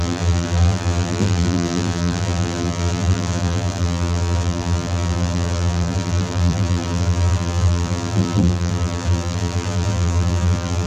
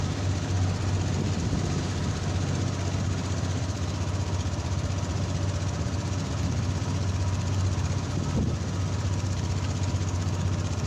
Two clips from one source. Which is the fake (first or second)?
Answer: first